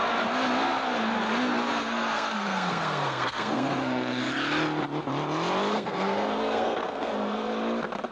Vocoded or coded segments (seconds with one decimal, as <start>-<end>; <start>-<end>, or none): 1.7-4.3; 5.7-7.5